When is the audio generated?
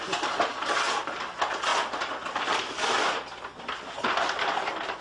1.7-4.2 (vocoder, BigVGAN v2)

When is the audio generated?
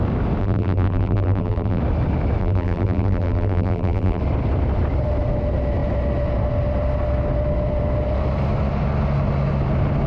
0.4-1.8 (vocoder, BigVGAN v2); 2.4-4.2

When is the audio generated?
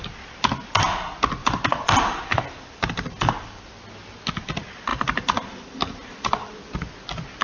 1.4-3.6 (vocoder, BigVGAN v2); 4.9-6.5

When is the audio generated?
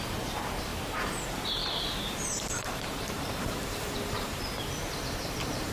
0.0-5.7 (vocoder, BigVGAN v2)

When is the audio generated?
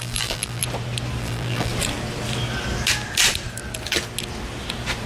0.0-0.6 (vocoder, BigVGAN v2); 1.2-1.7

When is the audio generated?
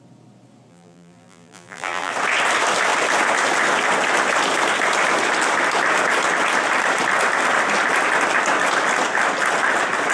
0.7-2.1 (vocoder, BigVGAN v2)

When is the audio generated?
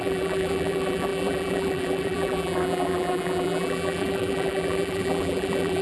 0.0-5.8 (vocoder, BigVGAN v2)